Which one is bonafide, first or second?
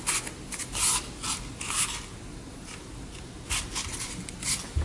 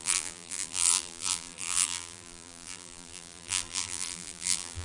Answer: first